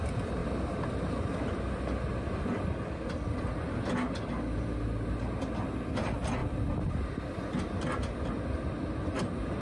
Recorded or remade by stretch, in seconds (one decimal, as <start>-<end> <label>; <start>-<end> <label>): 0.0-9.6 recorded